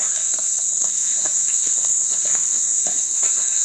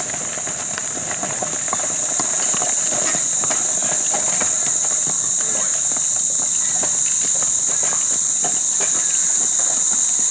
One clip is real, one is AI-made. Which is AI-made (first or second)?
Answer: first